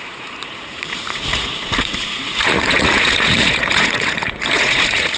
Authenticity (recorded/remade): remade